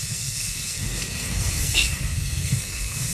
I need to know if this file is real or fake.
fake